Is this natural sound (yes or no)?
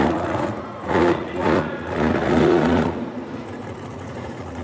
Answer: no